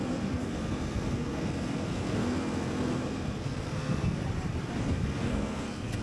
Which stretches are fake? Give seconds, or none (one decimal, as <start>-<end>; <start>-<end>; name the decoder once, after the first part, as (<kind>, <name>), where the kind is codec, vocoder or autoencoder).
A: 0.0-4.2 (codec, SNAC); 4.8-6.0